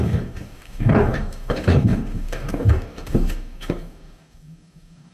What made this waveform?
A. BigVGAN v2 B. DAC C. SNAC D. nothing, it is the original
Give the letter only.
B